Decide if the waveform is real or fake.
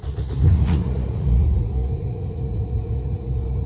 fake